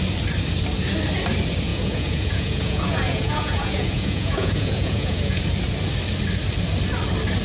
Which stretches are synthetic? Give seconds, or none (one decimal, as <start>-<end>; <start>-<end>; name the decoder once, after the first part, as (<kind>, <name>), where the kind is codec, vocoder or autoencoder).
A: 1.7-5.4 (vocoder, Vocos)